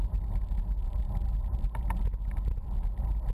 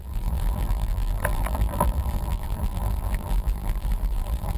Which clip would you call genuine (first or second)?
first